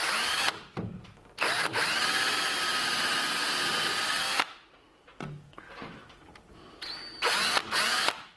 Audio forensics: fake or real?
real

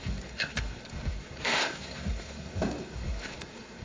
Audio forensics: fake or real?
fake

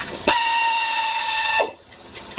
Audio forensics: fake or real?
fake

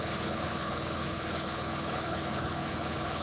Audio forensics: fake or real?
fake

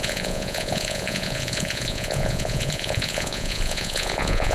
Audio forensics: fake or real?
fake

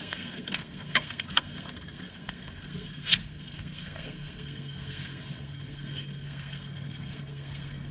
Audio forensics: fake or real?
fake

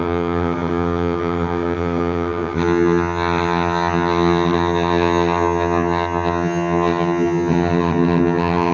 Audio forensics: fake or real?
fake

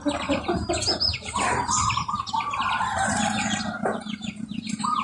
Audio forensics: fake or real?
fake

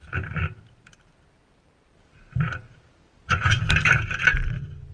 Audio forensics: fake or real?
fake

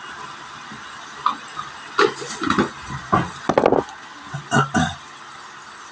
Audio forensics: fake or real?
real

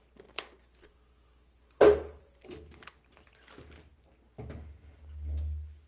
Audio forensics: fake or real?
real